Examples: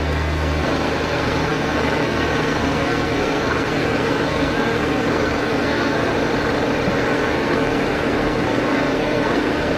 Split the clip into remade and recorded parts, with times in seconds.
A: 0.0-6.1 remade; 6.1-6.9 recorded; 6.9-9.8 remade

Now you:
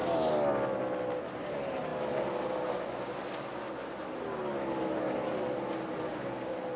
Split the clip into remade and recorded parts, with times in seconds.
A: 0.0-6.8 recorded

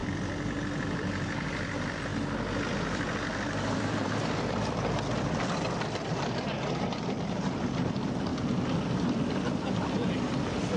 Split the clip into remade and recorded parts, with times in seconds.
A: 0.0-0.8 recorded; 0.8-2.1 remade; 2.1-2.7 recorded; 2.7-8.3 remade; 8.3-9.1 recorded; 9.1-10.8 remade

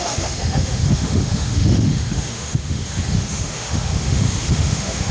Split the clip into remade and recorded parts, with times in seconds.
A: 0.0-5.1 remade